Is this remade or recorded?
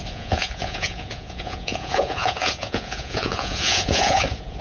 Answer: remade